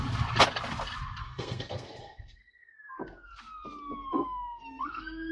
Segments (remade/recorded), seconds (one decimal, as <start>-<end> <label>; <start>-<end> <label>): 0.0-1.2 recorded; 1.2-2.9 remade; 2.9-4.1 recorded; 4.1-5.3 remade